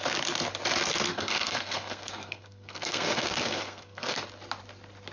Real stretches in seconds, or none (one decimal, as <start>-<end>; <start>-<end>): 0.0-1.1; 4.2-5.1